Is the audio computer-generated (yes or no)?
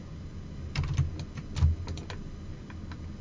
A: no